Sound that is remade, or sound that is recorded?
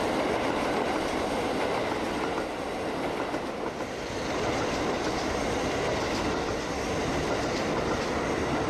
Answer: recorded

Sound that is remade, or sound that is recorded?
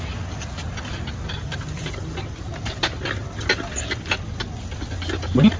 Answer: recorded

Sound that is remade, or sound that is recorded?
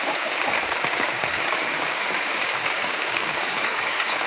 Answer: remade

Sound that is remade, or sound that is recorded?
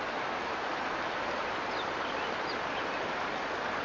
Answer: recorded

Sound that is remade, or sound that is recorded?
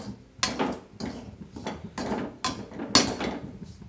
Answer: recorded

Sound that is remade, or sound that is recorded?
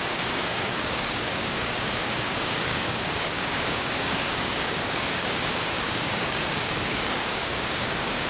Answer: remade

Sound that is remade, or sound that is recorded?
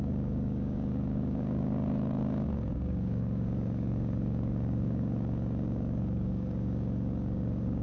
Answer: remade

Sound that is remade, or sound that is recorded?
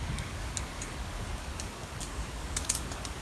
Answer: remade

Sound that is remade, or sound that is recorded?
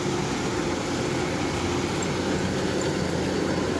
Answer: recorded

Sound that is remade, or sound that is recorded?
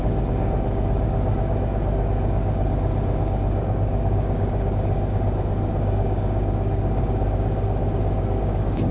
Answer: remade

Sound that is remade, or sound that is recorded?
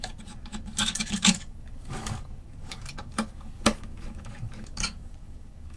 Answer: remade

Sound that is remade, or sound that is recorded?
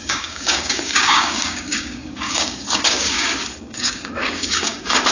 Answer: remade